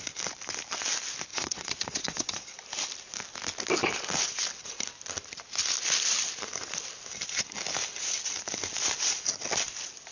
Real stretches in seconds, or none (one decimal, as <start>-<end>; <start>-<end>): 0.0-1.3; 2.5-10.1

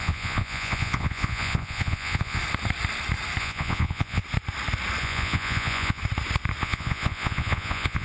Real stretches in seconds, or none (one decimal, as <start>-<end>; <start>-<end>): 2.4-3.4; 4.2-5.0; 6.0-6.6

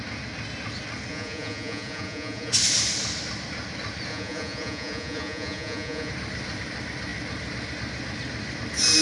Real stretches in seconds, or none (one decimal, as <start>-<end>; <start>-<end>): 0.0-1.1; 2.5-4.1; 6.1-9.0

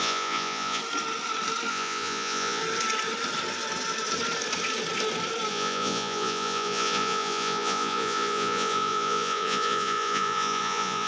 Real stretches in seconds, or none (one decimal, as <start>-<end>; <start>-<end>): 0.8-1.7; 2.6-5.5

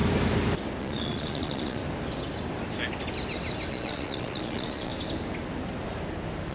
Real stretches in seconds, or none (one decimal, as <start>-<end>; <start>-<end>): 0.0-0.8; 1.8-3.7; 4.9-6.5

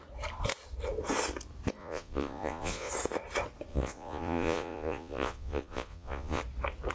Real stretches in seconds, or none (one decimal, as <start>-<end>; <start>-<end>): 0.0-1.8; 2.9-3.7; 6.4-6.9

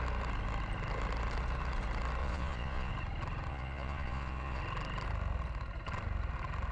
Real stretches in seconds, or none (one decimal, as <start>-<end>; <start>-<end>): 0.0-2.2; 2.9-3.5; 4.6-6.7

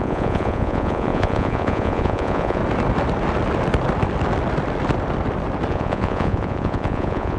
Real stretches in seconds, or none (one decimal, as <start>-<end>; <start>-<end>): 2.6-5.7